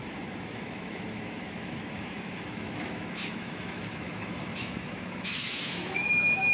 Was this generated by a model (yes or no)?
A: yes